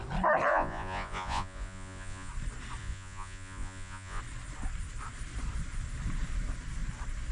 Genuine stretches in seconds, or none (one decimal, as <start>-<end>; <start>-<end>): 0.0-0.5; 2.3-2.8; 4.2-7.3